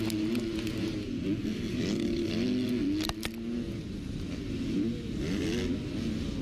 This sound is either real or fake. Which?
real